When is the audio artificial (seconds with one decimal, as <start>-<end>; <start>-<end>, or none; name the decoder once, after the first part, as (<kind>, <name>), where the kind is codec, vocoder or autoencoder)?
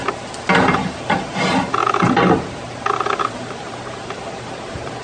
0.7-1.8 (vocoder, BigVGAN v2); 3.2-5.0